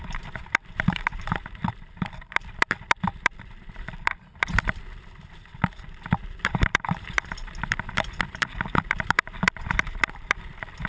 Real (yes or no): no